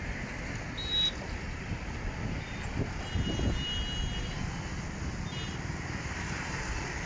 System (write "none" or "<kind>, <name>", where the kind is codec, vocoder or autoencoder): none